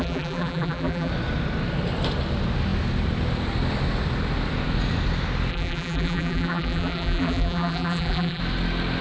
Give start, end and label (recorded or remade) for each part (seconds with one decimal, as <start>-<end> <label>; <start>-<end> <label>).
0.0-1.1 remade; 1.1-5.5 recorded; 5.5-8.4 remade; 8.4-9.0 recorded